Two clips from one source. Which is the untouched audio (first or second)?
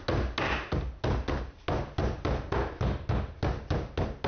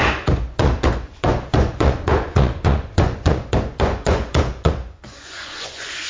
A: first